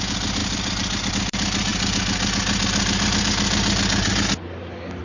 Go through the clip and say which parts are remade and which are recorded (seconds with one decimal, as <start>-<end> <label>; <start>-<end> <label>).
0.0-5.0 recorded